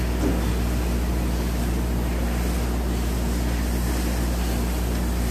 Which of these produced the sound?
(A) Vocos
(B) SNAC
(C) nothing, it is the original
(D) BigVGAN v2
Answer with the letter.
C